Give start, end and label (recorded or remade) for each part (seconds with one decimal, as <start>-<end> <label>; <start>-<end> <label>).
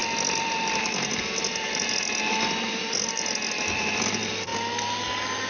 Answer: 0.0-4.5 remade; 4.5-5.5 recorded